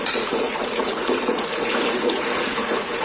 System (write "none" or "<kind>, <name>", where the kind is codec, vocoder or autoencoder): vocoder, Vocos